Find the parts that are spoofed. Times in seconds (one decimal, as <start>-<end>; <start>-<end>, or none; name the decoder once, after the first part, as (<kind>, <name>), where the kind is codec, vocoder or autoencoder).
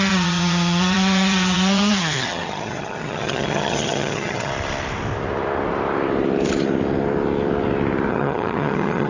0.0-4.5 (vocoder, HiFi-GAN); 8.1-9.1